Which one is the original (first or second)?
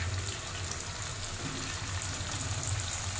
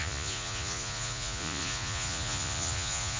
first